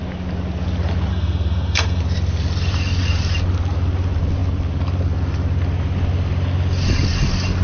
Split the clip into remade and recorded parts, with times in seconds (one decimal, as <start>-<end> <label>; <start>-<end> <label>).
0.0-1.1 recorded; 1.1-2.0 remade; 2.0-7.6 recorded

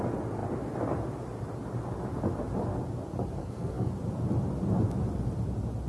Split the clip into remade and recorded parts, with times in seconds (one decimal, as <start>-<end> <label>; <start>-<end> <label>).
0.0-3.4 recorded; 3.4-3.9 remade; 3.9-5.9 recorded

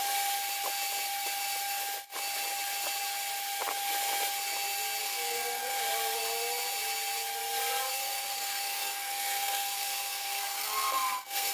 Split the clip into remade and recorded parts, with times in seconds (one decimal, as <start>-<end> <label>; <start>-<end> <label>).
0.0-5.0 recorded; 5.0-5.8 remade; 5.8-7.9 recorded; 7.9-11.5 remade

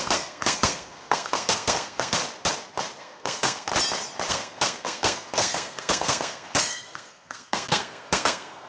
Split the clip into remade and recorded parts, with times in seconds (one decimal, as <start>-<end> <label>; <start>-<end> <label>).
0.0-2.2 remade; 2.2-3.0 recorded; 3.0-3.7 remade; 3.7-4.3 recorded; 4.3-8.7 remade

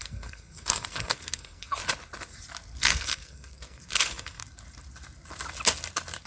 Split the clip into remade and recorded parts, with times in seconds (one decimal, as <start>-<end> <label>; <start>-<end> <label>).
0.0-1.8 remade; 1.8-2.8 recorded; 2.8-4.4 remade; 4.4-6.3 recorded

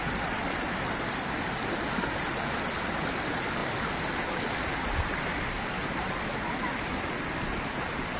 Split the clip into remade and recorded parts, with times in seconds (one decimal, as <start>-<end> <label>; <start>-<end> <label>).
0.0-8.2 recorded